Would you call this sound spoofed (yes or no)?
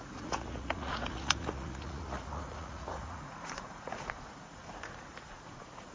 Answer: yes